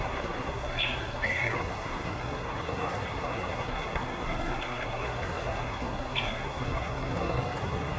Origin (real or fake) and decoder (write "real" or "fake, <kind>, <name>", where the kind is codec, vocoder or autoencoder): fake, codec, SNAC